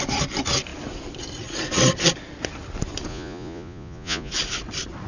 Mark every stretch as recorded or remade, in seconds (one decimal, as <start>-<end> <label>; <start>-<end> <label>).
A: 0.0-3.1 recorded; 3.1-4.3 remade; 4.3-5.1 recorded